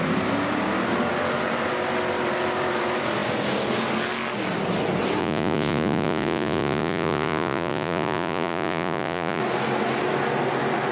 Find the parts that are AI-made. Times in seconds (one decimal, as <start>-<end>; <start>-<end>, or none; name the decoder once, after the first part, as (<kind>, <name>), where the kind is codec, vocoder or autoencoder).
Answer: 5.2-9.4 (vocoder, Vocos)